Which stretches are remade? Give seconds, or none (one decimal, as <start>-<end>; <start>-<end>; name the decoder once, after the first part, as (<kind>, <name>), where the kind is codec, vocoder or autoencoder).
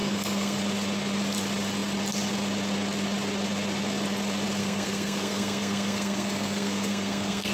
0.0-0.6 (codec, SNAC); 4.6-7.5